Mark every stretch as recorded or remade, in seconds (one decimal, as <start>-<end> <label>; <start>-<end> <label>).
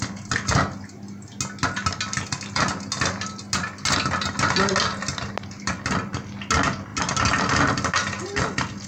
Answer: 0.0-8.9 recorded